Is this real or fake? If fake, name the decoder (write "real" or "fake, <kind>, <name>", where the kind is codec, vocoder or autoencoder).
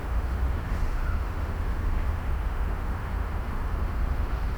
fake, autoencoder, DAC-VAE